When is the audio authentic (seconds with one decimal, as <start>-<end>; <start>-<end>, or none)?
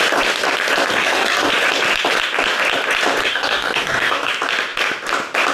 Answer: 0.0-0.9; 1.5-3.2; 4.3-5.5